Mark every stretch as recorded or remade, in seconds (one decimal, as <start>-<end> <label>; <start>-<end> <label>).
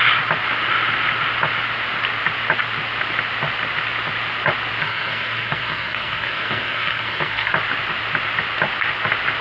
0.0-4.8 recorded; 4.8-7.5 remade; 7.5-9.4 recorded